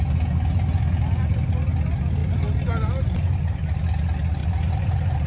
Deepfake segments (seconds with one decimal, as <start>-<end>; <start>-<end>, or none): 3.3-3.8; 4.4-5.3